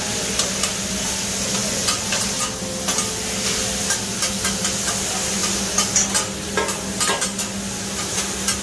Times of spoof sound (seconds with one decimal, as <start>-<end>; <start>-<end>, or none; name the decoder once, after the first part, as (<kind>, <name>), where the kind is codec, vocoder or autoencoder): 1.6-2.1 (vocoder, Vocos)